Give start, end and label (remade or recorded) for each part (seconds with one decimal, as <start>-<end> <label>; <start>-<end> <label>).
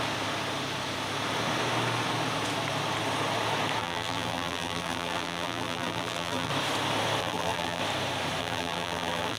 0.0-3.8 recorded; 3.8-6.5 remade; 6.5-7.2 recorded; 7.2-7.8 remade; 7.8-8.4 recorded; 8.4-9.4 remade